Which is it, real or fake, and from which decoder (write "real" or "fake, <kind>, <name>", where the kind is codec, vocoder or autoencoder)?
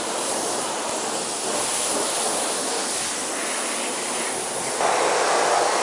real